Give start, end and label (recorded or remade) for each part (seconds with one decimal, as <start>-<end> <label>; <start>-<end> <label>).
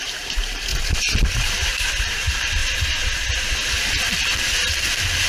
0.0-0.7 remade; 0.7-1.4 recorded; 1.4-2.6 remade; 2.6-4.7 recorded; 4.7-5.3 remade